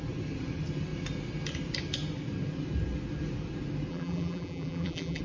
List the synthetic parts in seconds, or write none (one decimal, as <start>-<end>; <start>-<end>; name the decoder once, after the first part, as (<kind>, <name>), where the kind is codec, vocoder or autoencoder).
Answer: 3.9-5.2 (vocoder, BigVGAN v2)